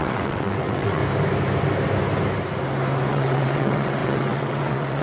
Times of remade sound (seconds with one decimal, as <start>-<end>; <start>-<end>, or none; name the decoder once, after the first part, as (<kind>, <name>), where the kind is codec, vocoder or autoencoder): 0.0-1.0 (vocoder, WaveNeXt); 3.1-5.0